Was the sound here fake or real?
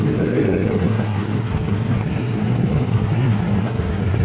fake